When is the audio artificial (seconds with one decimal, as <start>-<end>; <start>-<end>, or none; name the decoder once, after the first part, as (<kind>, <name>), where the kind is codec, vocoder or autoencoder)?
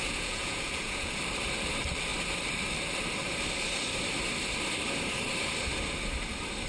0.0-1.2 (vocoder, Vocos)